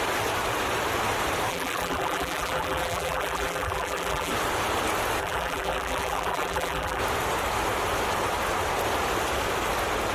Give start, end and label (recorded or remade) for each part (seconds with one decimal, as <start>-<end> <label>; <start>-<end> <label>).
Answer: 0.0-1.5 recorded; 1.5-4.3 remade; 4.3-5.2 recorded; 5.2-7.0 remade; 7.0-10.1 recorded

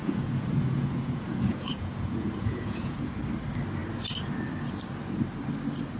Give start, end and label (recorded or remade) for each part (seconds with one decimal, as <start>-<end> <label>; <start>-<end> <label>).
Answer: 0.0-3.1 remade; 3.1-6.0 recorded

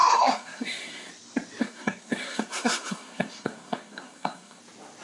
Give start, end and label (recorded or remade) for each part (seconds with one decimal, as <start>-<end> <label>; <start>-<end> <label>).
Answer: 0.0-1.1 remade; 1.1-1.6 recorded; 1.6-4.6 remade; 4.6-5.0 recorded

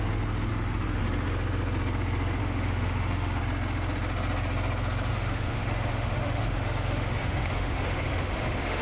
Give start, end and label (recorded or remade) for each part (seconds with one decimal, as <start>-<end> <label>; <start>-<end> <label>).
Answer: 0.0-0.5 recorded; 0.5-1.0 remade; 1.0-2.4 recorded; 2.4-3.4 remade; 3.4-5.1 recorded; 5.1-8.8 remade

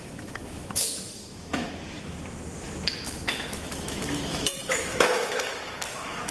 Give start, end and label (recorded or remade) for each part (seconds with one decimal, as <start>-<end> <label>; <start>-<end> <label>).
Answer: 0.0-6.3 remade